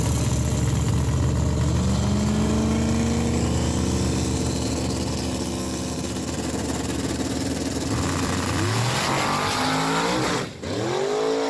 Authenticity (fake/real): real